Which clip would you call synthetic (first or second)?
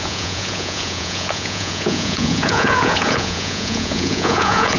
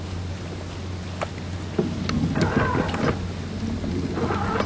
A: first